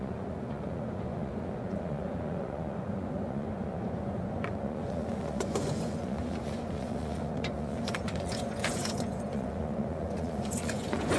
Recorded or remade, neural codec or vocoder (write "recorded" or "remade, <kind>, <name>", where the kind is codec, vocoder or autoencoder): remade, vocoder, Vocos